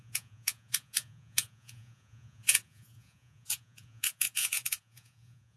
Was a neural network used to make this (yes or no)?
yes